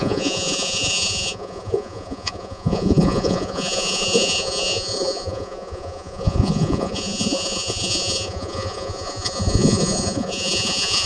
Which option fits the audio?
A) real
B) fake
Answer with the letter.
B